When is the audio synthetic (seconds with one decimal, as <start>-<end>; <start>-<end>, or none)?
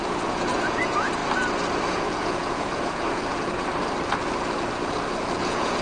0.0-1.2; 1.9-3.7; 5.3-5.8